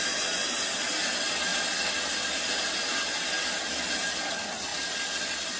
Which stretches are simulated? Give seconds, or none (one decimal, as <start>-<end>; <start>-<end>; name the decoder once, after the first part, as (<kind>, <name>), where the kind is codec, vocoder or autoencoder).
none